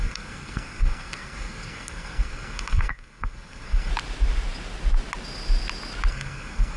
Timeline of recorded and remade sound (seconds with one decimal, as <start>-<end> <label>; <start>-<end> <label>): 0.0-3.9 remade; 3.9-6.1 recorded; 6.1-6.8 remade